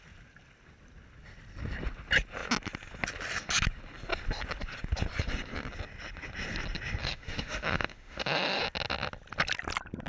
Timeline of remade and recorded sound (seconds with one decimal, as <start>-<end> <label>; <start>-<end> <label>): 0.0-7.0 recorded; 7.0-8.6 remade; 8.6-10.1 recorded

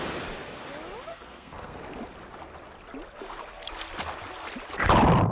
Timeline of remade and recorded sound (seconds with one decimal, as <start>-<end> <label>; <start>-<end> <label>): 0.0-1.1 recorded; 1.1-1.8 remade; 1.8-5.3 recorded